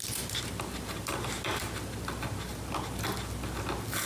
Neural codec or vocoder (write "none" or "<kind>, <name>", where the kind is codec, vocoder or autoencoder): none